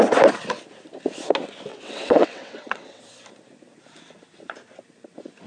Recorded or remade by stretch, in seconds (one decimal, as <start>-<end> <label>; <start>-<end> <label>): 0.0-1.7 recorded; 1.7-3.0 remade; 3.0-5.5 recorded